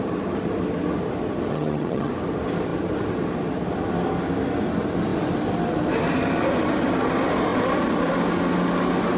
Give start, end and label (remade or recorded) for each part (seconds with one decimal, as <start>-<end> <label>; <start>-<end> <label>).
0.0-1.5 recorded; 1.5-2.1 remade; 2.1-9.2 recorded